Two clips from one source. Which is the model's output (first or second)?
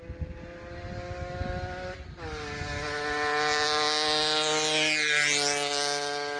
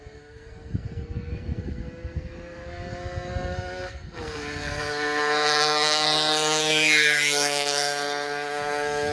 second